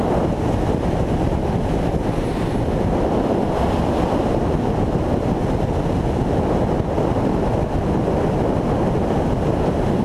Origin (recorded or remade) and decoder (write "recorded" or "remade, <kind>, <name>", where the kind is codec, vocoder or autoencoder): recorded